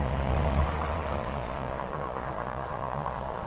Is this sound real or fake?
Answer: fake